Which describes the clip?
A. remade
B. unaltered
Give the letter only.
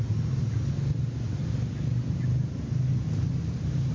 B